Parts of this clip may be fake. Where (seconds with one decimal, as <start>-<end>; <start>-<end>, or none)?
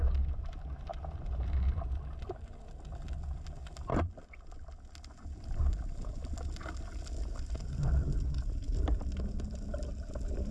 none